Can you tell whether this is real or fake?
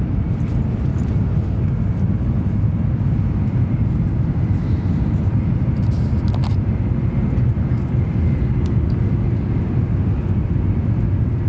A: real